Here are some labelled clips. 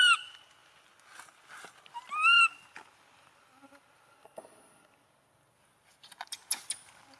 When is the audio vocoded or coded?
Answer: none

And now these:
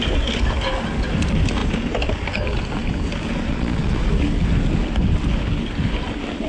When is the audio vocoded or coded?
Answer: 3.5-4.1 (vocoder, Vocos)

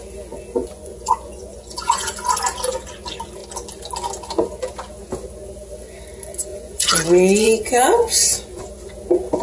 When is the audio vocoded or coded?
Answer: 0.6-2.4 (vocoder, Vocos); 6.5-8.6